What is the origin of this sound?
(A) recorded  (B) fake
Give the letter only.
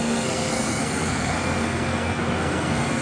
B